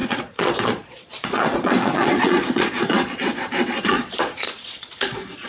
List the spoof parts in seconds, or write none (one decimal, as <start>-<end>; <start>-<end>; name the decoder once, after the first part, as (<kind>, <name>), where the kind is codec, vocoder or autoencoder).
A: 0.0-5.5 (vocoder, Vocos)